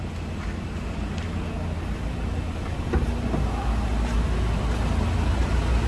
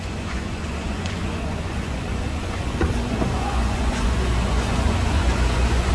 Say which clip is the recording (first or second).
first